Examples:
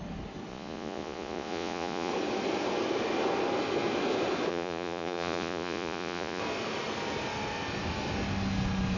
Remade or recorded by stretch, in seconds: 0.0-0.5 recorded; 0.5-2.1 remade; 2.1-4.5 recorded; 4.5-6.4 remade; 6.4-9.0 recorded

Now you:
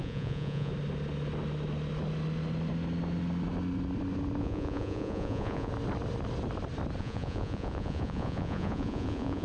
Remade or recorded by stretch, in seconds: 0.0-0.7 remade; 0.7-4.4 recorded; 4.4-5.7 remade; 5.7-7.0 recorded; 7.0-9.4 remade

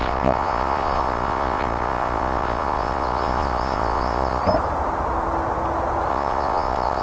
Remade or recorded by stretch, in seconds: 0.0-4.4 remade; 4.4-6.1 recorded; 6.1-7.0 remade

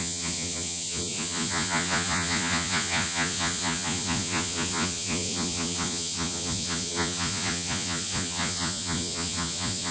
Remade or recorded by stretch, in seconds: 0.0-9.9 remade